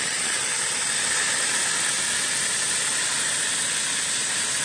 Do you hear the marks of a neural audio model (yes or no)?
no